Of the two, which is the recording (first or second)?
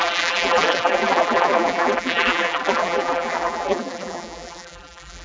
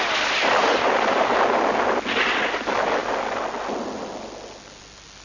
second